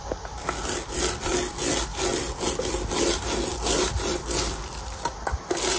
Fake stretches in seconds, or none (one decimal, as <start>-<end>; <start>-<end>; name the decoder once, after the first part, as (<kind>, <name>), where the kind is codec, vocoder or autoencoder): none